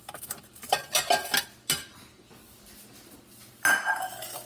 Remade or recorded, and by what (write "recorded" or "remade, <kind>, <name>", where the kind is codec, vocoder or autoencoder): recorded